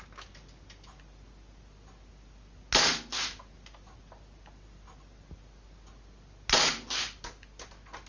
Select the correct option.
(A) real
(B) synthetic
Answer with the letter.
A